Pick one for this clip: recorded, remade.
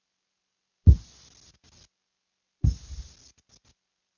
recorded